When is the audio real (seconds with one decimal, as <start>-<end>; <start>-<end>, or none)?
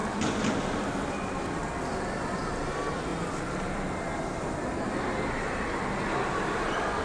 0.0-7.0